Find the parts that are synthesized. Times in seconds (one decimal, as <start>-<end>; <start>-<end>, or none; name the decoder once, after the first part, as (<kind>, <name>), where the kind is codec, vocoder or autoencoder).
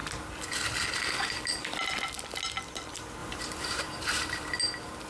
3.2-4.6 (vocoder, BigVGAN v2)